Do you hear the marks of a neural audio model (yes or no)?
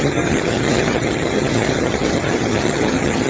yes